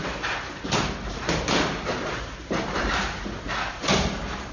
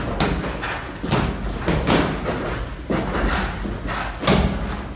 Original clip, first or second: second